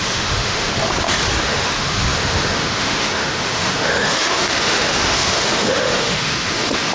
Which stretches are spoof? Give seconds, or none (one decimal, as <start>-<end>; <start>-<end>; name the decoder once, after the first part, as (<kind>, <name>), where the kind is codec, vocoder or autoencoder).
0.0-0.7 (autoencoder, DAC-VAE); 1.4-6.9